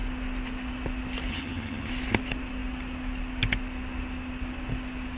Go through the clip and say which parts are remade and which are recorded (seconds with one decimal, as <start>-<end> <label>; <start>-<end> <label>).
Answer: 0.0-1.3 recorded; 1.3-1.9 remade; 1.9-5.2 recorded